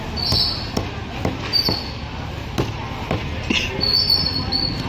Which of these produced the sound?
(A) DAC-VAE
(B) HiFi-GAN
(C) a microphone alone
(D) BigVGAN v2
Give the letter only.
C